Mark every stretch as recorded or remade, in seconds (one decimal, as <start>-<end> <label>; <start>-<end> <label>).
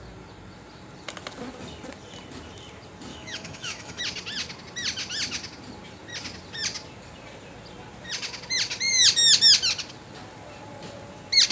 0.0-3.1 recorded; 3.1-4.0 remade; 4.0-11.5 recorded